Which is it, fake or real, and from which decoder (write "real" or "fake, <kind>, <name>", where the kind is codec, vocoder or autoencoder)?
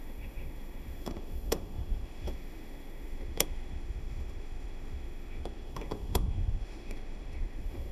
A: fake, autoencoder, DAC-VAE